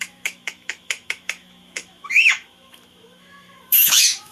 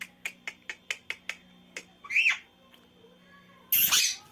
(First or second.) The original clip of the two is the second